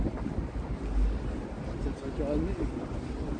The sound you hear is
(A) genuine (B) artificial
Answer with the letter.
A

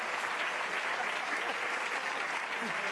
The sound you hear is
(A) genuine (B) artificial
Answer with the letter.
B